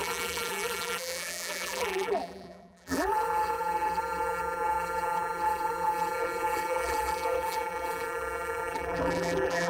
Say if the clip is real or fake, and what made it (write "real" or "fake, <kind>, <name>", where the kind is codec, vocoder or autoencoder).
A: fake, vocoder, BigVGAN v2